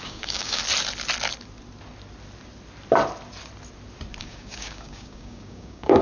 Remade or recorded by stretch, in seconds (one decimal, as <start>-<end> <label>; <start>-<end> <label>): 0.0-0.6 remade; 0.6-4.2 recorded; 4.2-6.0 remade